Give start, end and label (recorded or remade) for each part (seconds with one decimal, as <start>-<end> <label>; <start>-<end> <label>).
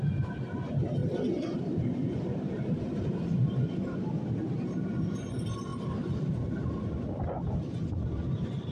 0.0-1.0 recorded; 1.0-3.4 remade; 3.4-8.7 recorded